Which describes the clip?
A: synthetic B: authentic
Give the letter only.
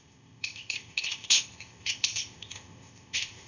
A